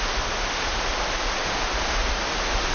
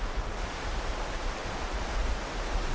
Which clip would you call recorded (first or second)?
first